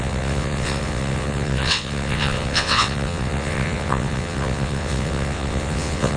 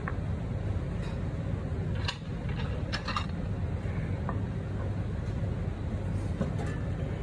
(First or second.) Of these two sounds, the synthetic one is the first